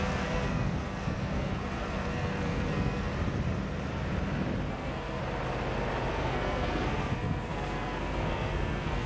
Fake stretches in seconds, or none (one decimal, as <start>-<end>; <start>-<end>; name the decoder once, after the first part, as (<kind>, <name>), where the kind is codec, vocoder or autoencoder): 0.0-3.1 (codec, SNAC); 4.7-5.2; 6.1-9.1